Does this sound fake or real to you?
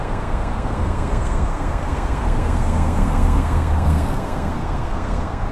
fake